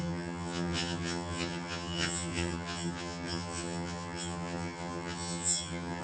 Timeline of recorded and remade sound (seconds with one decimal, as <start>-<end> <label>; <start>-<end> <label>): 0.0-6.0 remade